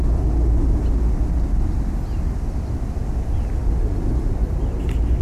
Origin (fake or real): real